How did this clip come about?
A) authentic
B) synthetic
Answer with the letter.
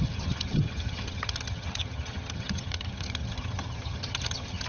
B